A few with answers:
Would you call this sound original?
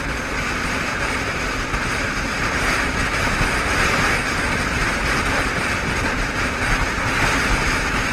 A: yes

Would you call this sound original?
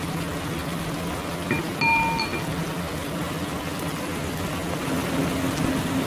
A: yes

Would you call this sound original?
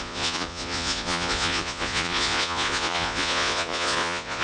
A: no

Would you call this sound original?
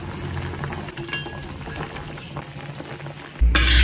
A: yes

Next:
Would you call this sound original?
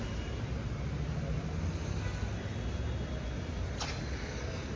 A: yes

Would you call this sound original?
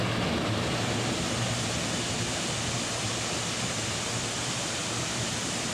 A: yes